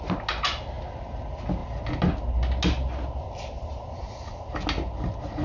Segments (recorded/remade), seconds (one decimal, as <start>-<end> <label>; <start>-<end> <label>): 0.0-5.4 recorded